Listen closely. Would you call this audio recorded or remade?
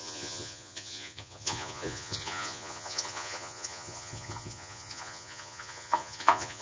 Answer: remade